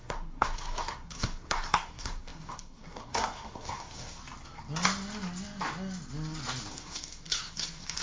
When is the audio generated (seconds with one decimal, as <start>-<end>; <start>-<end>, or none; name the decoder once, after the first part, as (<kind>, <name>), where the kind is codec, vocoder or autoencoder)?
0.0-4.2 (codec, SNAC); 6.7-8.0